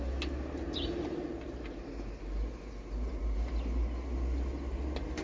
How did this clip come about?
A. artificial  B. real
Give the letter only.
B